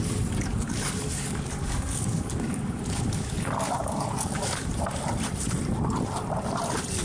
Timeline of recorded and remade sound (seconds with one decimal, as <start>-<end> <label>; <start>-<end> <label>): 0.0-0.5 recorded; 0.5-4.7 remade; 4.7-7.0 recorded